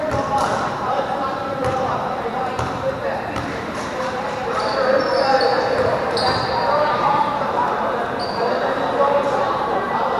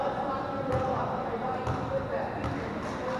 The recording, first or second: second